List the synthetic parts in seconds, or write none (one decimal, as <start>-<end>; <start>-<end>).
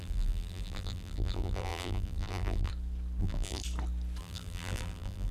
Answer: 0.0-2.7; 3.2-3.6; 4.2-5.3